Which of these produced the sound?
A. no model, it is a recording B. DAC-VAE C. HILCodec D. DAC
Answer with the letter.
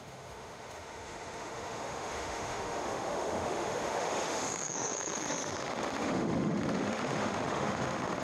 B